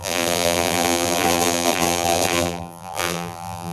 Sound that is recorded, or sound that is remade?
remade